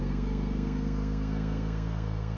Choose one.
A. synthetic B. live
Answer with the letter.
A